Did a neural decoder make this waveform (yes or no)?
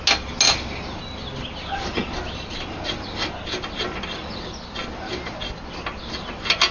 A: no